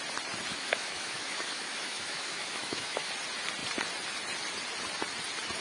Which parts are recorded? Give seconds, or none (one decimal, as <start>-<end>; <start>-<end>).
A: 0.0-0.5; 3.1-5.6